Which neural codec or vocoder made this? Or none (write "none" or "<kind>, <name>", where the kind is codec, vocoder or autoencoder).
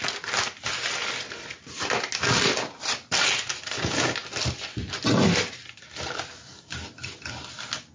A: none